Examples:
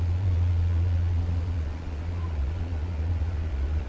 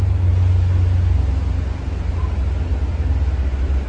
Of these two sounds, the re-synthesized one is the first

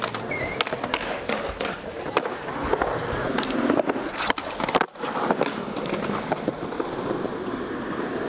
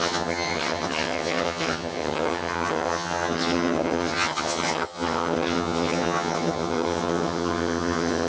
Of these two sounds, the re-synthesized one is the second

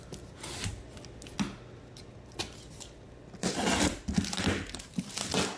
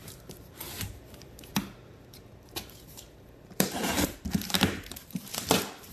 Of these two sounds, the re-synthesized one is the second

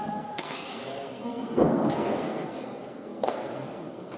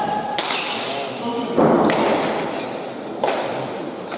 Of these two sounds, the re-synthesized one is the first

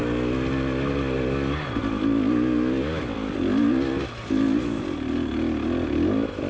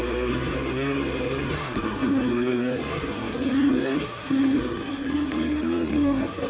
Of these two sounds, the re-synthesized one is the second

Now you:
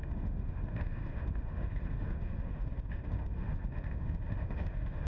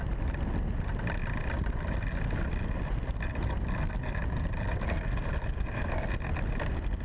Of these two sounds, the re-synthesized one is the first